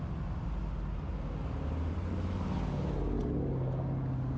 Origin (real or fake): real